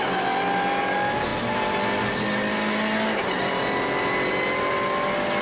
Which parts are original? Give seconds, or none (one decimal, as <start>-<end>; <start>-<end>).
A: 0.0-5.4